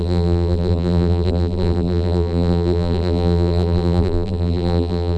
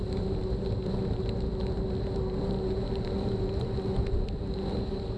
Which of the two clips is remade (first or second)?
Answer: first